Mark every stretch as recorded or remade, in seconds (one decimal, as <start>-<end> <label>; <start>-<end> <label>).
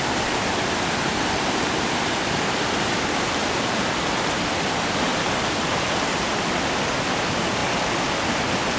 0.0-3.4 recorded; 3.4-3.9 remade; 3.9-5.1 recorded; 5.1-6.6 remade; 6.6-8.8 recorded